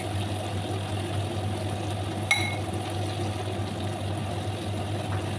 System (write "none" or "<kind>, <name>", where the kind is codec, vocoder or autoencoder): none